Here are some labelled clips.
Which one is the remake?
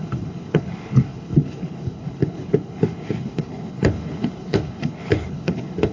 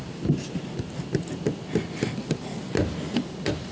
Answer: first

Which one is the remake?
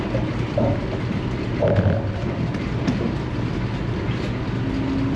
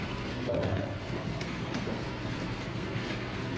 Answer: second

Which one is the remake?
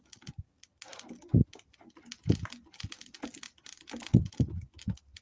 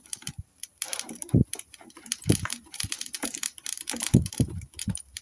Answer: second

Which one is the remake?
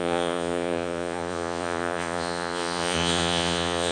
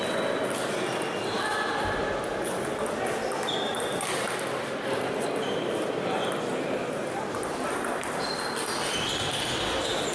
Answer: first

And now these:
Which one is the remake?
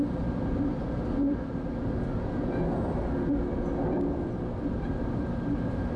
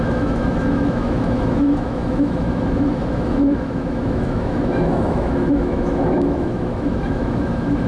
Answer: second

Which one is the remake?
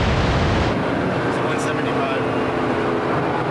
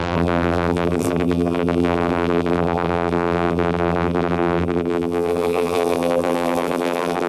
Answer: second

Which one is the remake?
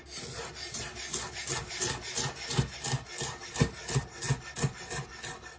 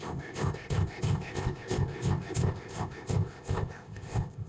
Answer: second